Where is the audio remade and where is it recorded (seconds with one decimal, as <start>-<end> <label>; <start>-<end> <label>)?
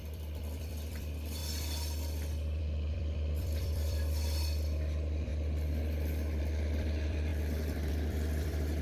0.0-1.4 remade; 1.4-2.6 recorded; 2.6-5.3 remade; 5.3-6.4 recorded; 6.4-8.8 remade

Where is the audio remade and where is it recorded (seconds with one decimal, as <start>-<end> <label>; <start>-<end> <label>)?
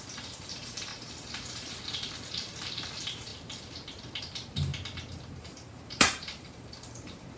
0.0-0.9 remade; 0.9-2.9 recorded; 2.9-3.3 remade; 3.3-4.2 recorded; 4.2-4.7 remade; 4.7-5.4 recorded; 5.4-7.4 remade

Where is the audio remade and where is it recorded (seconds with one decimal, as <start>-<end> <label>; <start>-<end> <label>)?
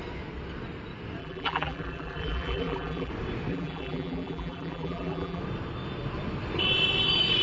0.0-1.2 recorded; 1.2-3.1 remade; 3.1-3.5 recorded; 3.5-5.4 remade; 5.4-7.4 recorded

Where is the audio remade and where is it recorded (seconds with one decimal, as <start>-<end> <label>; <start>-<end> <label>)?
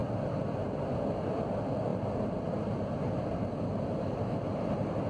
0.0-5.1 recorded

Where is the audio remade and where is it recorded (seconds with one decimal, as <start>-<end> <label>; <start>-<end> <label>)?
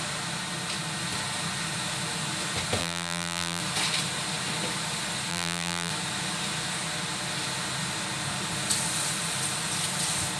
0.0-2.8 recorded; 2.8-3.6 remade; 3.6-5.3 recorded; 5.3-5.9 remade; 5.9-10.4 recorded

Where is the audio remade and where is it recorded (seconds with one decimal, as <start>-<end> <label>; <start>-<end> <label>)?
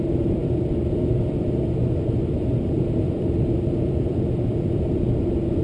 0.0-5.6 remade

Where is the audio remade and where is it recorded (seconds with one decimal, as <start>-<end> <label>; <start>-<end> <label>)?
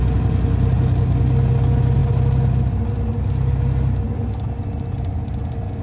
0.0-5.8 recorded